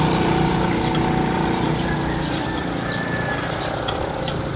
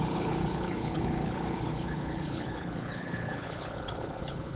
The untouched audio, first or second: first